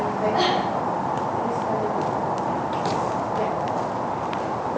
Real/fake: real